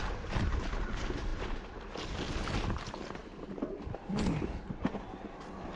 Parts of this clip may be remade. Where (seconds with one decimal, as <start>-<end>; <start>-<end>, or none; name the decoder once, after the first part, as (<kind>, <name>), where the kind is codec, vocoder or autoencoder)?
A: none